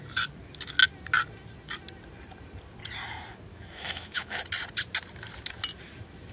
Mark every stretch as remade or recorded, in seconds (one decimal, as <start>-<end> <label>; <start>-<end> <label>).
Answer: 0.0-3.5 recorded; 3.5-4.4 remade; 4.4-6.3 recorded